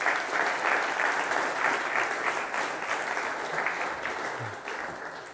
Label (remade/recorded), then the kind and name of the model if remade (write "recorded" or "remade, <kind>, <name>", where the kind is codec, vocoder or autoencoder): recorded